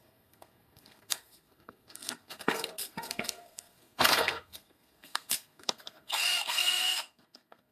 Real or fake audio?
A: fake